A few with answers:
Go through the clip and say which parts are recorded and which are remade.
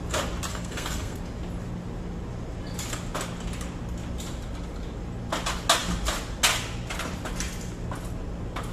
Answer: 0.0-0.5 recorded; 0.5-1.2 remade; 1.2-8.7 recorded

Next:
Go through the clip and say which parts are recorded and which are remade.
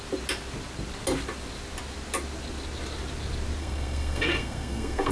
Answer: 0.0-3.6 recorded; 3.6-5.1 remade